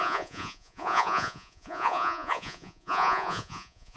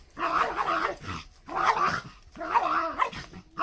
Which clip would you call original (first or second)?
second